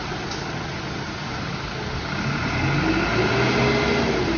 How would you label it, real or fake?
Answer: real